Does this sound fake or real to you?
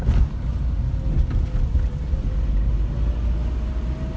real